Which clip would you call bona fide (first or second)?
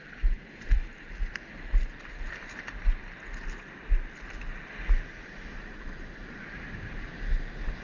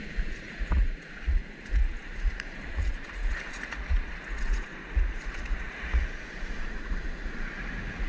first